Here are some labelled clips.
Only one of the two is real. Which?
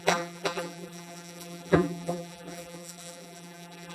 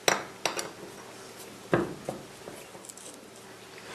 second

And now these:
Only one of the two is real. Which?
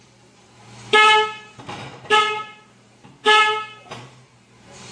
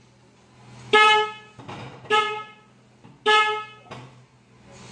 second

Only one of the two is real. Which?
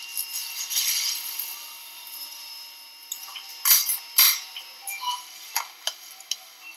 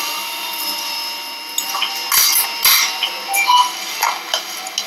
second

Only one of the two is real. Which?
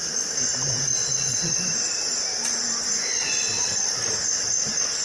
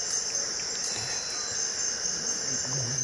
second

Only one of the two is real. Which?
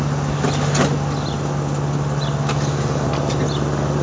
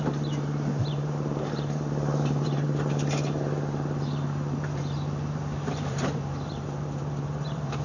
first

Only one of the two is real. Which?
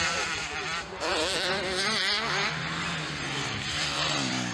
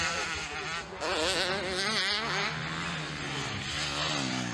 second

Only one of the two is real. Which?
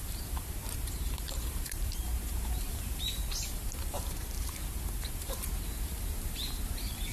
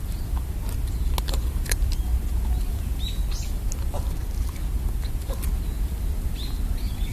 second